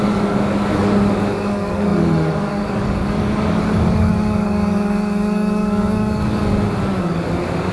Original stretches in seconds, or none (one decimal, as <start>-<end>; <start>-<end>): 6.4-7.0